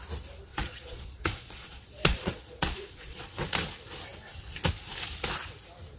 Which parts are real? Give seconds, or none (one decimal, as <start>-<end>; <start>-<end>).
0.0-0.5; 3.4-6.0

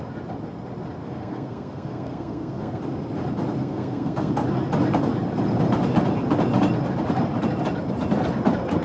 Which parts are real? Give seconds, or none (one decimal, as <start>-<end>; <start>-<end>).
0.0-1.0; 2.8-3.6; 4.3-8.8